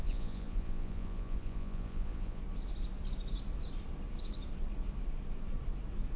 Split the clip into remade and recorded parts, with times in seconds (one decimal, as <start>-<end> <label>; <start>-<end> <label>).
0.0-2.4 remade; 2.4-6.2 recorded